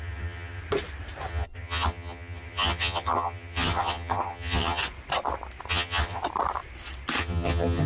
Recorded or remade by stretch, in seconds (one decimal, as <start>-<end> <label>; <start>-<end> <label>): 0.0-0.6 remade; 0.6-1.3 recorded; 1.3-4.8 remade; 4.8-5.7 recorded; 5.7-6.2 remade; 6.2-7.2 recorded; 7.2-7.9 remade